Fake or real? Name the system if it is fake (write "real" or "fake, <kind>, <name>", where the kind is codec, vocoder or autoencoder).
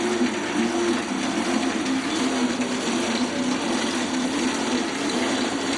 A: real